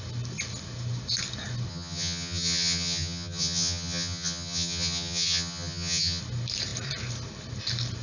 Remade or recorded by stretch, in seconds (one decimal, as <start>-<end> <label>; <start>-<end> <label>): 0.0-1.7 recorded; 1.7-6.2 remade; 6.2-8.0 recorded